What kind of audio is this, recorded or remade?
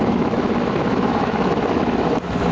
remade